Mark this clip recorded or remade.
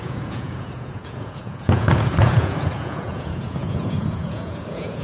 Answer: remade